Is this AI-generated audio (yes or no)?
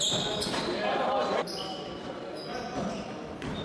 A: no